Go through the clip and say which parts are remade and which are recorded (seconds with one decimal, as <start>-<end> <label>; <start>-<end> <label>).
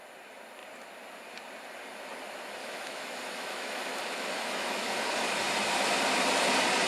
0.0-2.6 recorded; 2.6-5.3 remade; 5.3-6.9 recorded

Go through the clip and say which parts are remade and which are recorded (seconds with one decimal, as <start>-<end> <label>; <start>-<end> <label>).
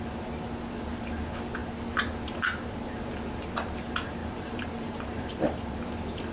0.0-4.2 recorded; 4.2-5.8 remade; 5.8-6.3 recorded